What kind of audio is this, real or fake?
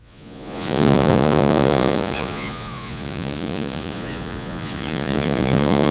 fake